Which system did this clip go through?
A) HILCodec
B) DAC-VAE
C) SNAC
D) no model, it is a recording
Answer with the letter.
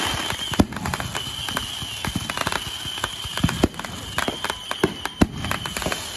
D